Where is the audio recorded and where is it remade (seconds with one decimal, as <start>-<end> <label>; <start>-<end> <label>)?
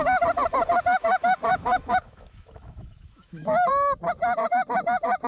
0.0-1.5 recorded; 1.5-3.7 remade; 3.7-5.3 recorded